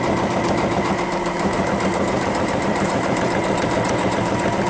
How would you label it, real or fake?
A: fake